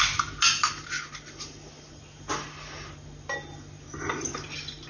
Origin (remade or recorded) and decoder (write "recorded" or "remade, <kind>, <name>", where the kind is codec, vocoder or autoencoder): recorded